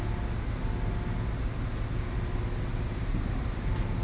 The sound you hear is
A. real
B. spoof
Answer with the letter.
A